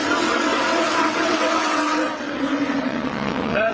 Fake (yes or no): yes